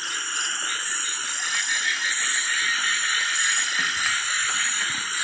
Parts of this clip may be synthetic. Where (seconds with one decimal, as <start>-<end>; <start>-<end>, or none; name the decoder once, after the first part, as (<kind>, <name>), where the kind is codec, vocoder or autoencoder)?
none